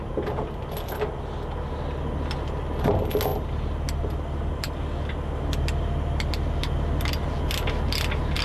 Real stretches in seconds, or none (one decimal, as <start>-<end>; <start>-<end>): 0.0-8.4